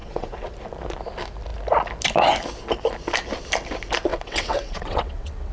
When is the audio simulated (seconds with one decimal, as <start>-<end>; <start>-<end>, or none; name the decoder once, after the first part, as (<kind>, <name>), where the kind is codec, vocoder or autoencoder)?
0.0-0.5 (vocoder, WaveNeXt); 4.1-5.5